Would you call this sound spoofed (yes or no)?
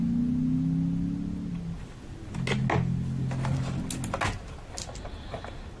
no